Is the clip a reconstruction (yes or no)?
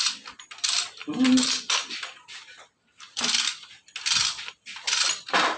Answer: no